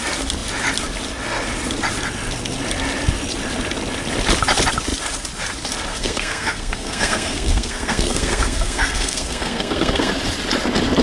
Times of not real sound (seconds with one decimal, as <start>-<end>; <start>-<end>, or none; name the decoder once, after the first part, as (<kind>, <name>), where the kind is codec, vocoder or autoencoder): 5.9-10.1 (codec, SNAC)